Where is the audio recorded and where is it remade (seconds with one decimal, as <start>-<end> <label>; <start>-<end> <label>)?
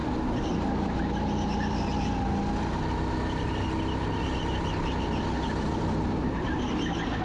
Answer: 0.0-7.2 recorded